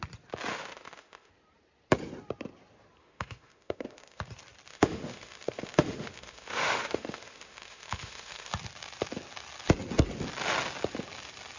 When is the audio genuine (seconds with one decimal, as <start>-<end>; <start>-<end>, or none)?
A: 0.0-0.5; 1.3-3.0; 4.2-4.7; 8.5-11.6